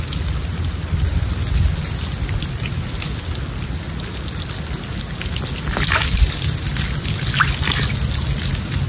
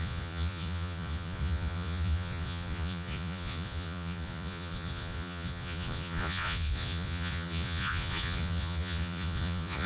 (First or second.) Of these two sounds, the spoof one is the second